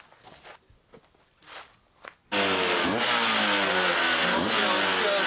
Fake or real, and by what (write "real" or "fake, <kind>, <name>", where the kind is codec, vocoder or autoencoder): real